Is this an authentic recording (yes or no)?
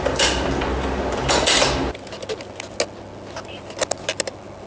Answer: yes